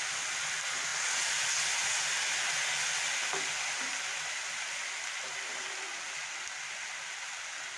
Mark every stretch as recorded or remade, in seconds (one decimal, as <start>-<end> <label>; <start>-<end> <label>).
0.0-7.8 recorded